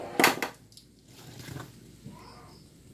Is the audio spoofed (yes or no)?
no